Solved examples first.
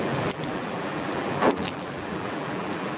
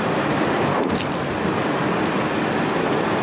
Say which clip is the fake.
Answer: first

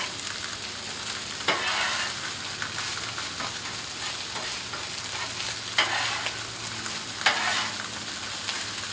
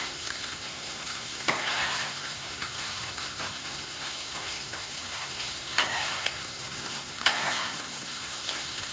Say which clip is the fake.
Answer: second